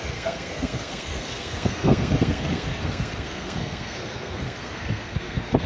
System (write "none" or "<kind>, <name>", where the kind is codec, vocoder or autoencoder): codec, SNAC